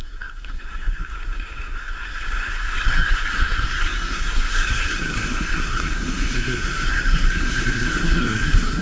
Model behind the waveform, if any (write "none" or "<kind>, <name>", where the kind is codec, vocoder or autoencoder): codec, SNAC